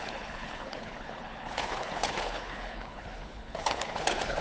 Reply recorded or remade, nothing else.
remade